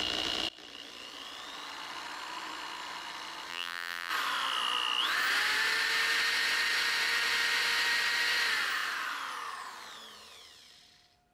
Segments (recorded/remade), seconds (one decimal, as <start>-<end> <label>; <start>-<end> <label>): 0.0-3.5 recorded; 3.5-4.1 remade; 4.1-11.3 recorded